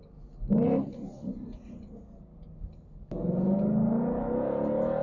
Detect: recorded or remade recorded